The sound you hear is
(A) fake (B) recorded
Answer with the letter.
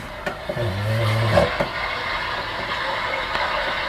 B